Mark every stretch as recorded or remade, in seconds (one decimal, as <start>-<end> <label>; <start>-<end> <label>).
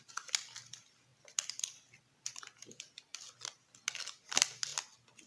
0.0-1.1 recorded; 1.1-2.7 remade; 2.7-5.3 recorded